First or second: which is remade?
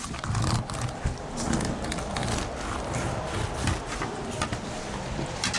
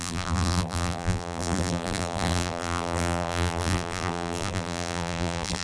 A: second